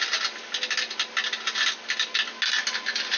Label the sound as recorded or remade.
recorded